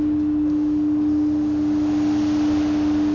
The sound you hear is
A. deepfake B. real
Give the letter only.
B